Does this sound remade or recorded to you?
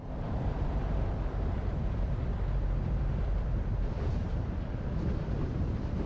remade